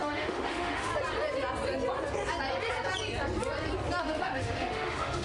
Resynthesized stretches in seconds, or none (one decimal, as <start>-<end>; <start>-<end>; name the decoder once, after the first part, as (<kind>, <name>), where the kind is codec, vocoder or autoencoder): 0.0-0.9 (autoencoder, DAC-VAE); 4.0-5.2